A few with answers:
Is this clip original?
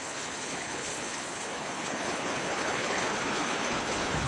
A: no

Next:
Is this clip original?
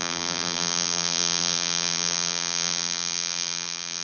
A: no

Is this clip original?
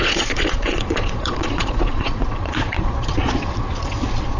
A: no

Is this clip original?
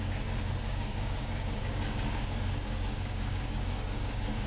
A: no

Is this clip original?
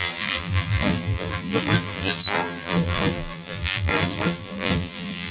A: no